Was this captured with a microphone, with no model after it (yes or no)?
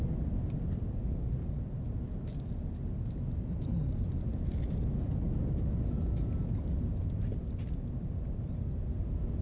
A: yes